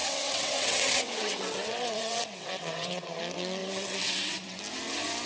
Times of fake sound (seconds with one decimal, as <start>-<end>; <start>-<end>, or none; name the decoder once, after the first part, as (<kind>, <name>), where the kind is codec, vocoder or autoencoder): 0.0-3.2 (vocoder, WaveNeXt); 3.6-4.6